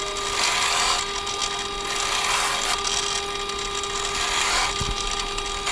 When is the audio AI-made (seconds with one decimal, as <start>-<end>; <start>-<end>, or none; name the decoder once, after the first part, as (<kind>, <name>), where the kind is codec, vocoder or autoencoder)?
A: none